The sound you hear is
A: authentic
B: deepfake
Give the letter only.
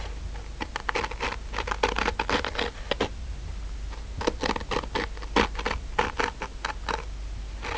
A